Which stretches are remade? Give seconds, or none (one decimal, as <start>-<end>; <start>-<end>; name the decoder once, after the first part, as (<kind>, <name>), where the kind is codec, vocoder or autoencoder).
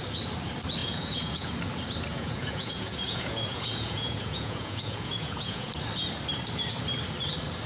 0.8-1.5 (vocoder, Vocos); 2.1-5.7